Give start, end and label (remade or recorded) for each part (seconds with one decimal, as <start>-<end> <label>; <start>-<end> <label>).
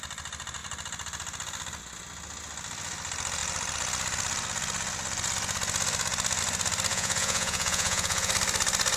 0.0-6.9 recorded; 6.9-8.3 remade; 8.3-9.0 recorded